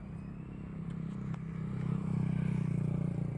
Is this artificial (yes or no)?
no